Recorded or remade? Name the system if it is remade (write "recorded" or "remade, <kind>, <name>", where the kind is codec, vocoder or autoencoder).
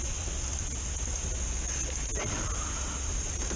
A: recorded